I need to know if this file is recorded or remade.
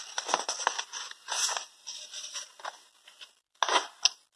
recorded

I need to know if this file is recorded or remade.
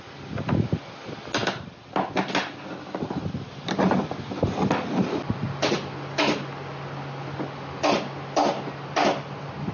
recorded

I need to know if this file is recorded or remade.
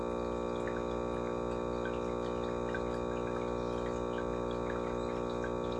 recorded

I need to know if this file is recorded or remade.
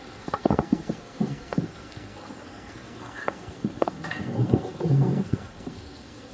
remade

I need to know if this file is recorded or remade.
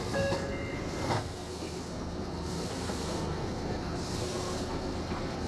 remade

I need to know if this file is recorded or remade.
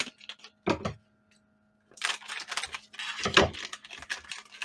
recorded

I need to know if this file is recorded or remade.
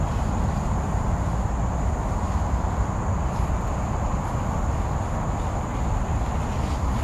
recorded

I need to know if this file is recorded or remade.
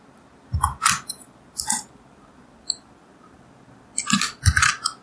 recorded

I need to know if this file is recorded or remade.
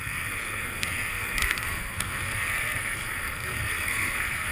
remade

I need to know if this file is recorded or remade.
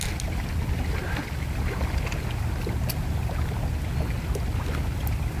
recorded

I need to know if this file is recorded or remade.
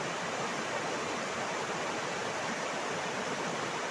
recorded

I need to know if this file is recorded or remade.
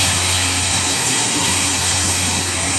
remade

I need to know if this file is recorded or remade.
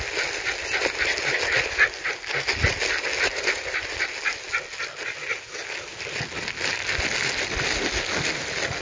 recorded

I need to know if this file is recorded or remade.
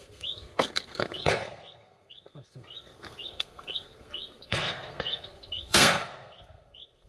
remade